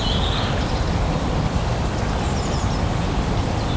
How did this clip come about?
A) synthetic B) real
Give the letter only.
B